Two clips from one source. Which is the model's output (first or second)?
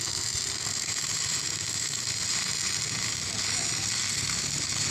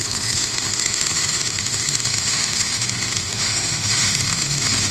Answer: second